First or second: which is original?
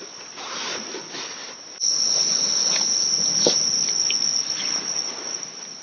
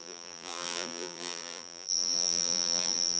first